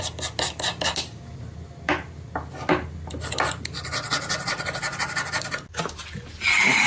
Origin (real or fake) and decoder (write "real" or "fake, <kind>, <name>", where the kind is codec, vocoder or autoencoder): real